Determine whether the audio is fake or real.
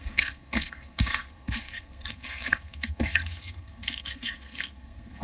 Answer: fake